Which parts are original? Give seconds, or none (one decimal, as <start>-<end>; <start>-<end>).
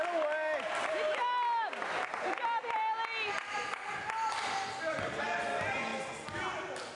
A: 0.0-6.9